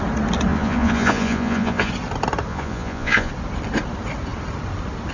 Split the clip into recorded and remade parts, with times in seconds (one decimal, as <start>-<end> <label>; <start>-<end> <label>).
0.0-0.5 recorded; 0.5-1.9 remade; 1.9-2.5 recorded; 2.5-3.3 remade; 3.3-5.1 recorded